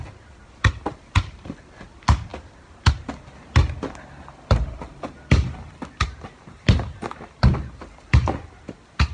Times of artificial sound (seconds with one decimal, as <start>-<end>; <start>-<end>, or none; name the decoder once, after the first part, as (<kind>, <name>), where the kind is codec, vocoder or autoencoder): none